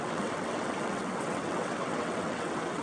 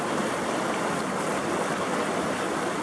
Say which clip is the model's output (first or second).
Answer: first